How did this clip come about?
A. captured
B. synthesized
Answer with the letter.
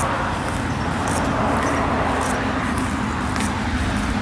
A